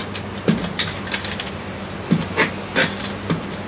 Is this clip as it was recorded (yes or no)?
yes